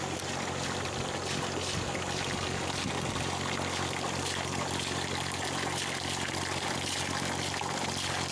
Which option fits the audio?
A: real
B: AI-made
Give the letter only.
A